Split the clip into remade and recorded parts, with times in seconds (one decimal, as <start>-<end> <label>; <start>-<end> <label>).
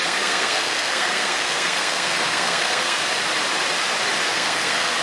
0.0-3.0 remade; 3.0-4.3 recorded; 4.3-5.0 remade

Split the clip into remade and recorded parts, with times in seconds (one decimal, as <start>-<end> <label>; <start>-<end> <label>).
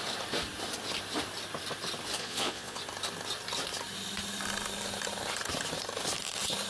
0.0-2.2 recorded; 2.2-2.8 remade; 2.8-6.7 recorded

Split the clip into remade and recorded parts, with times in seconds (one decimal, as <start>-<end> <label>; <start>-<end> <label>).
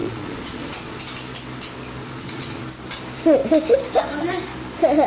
0.0-1.0 remade; 1.0-2.0 recorded; 2.0-2.6 remade; 2.6-5.1 recorded